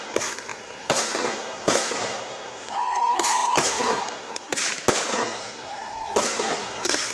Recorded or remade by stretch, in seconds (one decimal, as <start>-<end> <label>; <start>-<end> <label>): 0.0-4.6 remade; 4.6-5.1 recorded; 5.1-7.1 remade